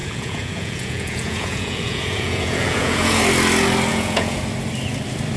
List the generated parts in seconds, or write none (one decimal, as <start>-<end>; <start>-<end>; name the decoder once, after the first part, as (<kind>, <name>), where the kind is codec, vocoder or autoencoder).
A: 0.0-3.2 (vocoder, Vocos); 3.9-4.4